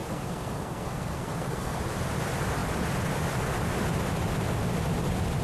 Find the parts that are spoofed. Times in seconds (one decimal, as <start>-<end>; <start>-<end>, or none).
0.0-1.8